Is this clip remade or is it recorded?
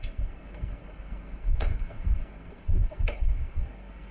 remade